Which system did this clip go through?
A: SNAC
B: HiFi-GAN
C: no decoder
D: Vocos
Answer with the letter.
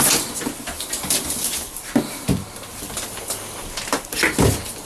C